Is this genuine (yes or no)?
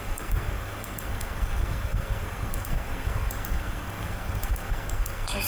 no